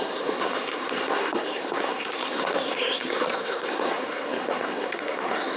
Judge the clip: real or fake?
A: fake